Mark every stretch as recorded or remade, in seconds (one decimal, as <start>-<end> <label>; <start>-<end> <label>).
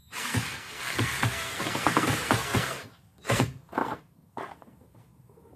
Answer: 0.0-5.6 remade